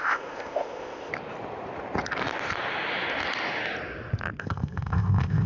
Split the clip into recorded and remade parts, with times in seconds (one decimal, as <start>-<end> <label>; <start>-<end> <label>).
0.0-1.1 remade; 1.1-4.4 recorded; 4.4-5.5 remade

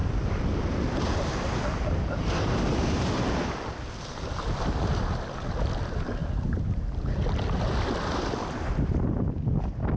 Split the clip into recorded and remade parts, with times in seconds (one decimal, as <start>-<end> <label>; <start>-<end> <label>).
0.0-0.6 remade; 0.6-6.2 recorded; 6.2-7.7 remade; 7.7-10.0 recorded

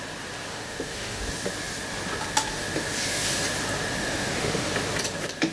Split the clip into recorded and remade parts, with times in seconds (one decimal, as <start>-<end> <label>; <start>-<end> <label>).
0.0-0.5 recorded; 0.5-1.2 remade; 1.2-4.0 recorded; 4.0-4.7 remade; 4.7-5.5 recorded

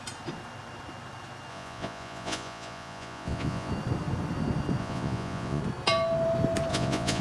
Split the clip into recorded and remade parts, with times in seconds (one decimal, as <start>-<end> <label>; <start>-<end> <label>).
0.0-1.5 recorded; 1.5-3.7 remade; 3.7-4.8 recorded; 4.8-5.6 remade; 5.6-6.7 recorded; 6.7-7.2 remade

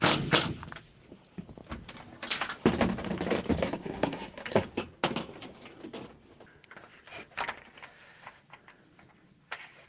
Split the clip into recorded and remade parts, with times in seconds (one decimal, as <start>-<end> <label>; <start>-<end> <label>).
0.0-3.6 recorded; 3.6-4.8 remade; 4.8-9.9 recorded

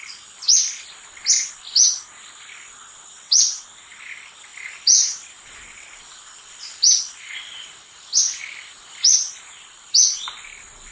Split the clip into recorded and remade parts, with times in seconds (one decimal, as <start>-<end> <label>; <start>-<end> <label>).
0.0-10.9 recorded

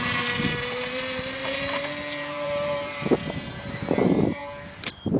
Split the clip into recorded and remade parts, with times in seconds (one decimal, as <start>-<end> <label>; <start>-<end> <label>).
0.0-4.4 remade; 4.4-5.2 recorded

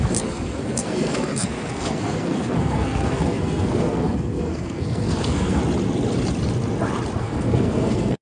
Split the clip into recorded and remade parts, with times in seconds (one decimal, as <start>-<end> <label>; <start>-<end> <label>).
0.0-5.6 remade; 5.6-7.2 recorded; 7.2-8.2 remade